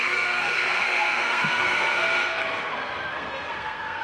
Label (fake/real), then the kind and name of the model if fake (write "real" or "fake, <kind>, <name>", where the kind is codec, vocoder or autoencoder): fake, codec, SNAC